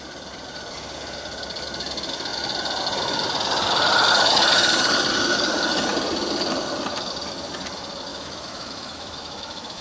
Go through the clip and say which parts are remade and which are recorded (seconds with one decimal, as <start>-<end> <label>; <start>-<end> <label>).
0.0-8.1 recorded; 8.1-9.8 remade